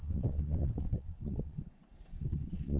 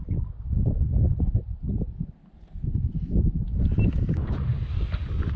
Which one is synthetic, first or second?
first